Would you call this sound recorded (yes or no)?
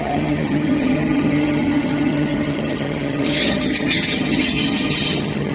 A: no